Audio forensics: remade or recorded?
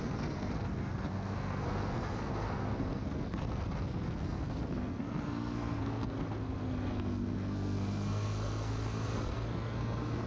remade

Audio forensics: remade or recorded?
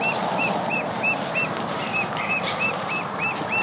remade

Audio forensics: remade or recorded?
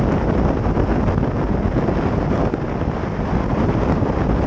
recorded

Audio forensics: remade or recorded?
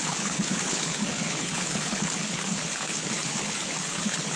remade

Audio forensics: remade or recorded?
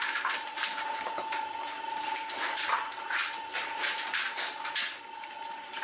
remade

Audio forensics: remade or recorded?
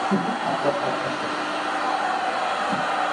recorded